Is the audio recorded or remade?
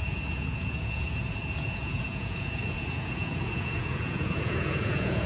remade